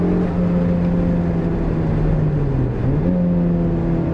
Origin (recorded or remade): recorded